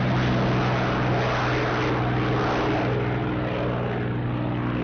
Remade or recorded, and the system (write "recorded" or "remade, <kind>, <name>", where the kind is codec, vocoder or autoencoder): recorded